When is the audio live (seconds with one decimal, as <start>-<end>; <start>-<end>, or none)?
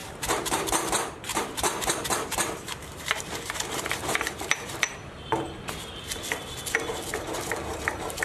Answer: 4.9-7.1